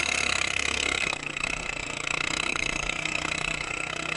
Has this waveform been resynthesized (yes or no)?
yes